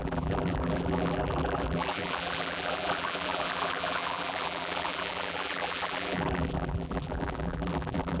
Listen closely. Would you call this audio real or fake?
fake